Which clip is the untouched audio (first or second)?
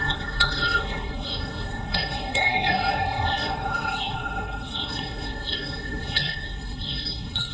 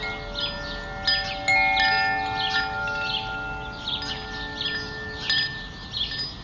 second